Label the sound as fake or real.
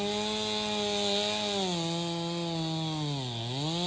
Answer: real